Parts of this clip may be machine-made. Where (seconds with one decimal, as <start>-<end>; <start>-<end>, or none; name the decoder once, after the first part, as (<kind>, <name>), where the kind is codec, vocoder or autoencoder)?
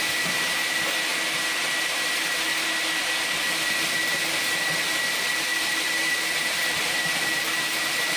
5.5-8.2 (vocoder, BigVGAN v2)